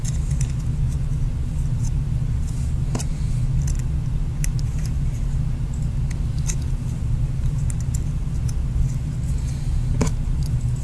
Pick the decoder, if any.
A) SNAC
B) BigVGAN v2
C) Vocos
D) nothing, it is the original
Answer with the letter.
D